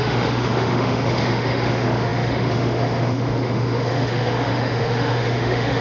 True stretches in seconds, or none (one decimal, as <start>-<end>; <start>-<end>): none